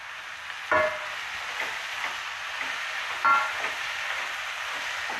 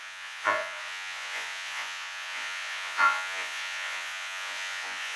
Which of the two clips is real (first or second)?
first